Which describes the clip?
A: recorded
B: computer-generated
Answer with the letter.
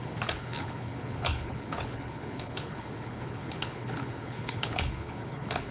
B